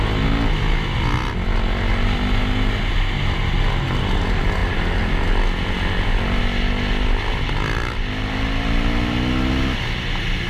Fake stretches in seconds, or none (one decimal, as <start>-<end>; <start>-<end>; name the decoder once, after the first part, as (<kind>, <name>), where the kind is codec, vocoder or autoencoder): none